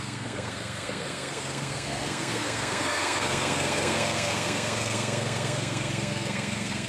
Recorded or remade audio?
remade